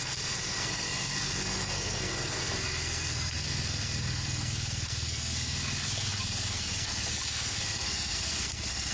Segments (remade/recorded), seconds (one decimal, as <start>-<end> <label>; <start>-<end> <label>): 0.0-8.9 remade